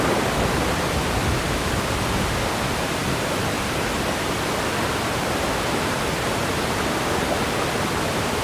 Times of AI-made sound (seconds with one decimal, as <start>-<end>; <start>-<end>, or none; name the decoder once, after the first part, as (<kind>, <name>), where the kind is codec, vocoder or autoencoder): none